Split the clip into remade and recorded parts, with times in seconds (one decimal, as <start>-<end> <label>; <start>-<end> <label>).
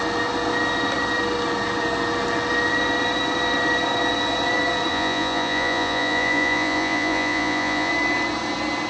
0.0-4.9 recorded; 4.9-7.9 remade; 7.9-8.9 recorded